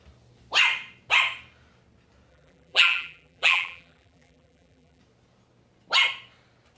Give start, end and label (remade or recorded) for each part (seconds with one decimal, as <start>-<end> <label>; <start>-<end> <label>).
0.0-2.3 recorded; 2.3-5.0 remade; 5.0-6.8 recorded